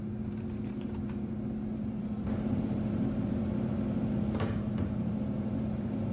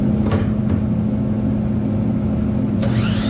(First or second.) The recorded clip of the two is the second